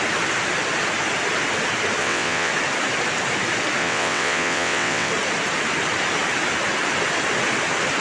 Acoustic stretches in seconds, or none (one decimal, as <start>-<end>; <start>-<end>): 0.0-2.0; 2.5-3.8; 5.1-8.0